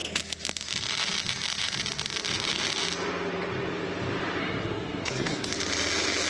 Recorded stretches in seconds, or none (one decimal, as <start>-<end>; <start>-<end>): 0.0-4.4; 5.5-6.3

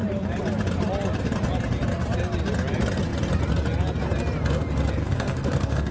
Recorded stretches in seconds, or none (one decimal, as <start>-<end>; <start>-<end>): 0.0-5.0

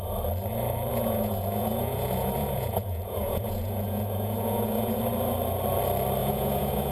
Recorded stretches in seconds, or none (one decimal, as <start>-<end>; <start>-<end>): 0.0-0.9; 5.0-6.2

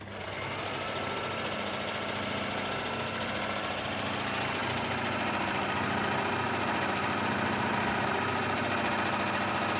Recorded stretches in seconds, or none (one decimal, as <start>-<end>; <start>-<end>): 0.0-9.8

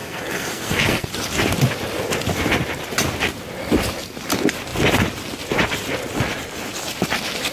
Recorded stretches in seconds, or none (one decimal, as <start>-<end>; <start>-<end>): 1.1-7.5

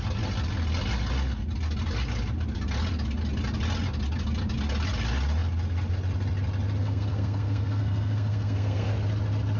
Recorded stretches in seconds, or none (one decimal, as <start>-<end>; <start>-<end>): 0.0-6.8; 8.9-9.6